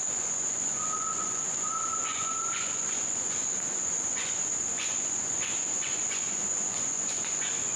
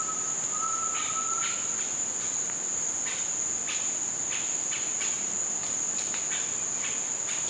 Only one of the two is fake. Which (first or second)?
first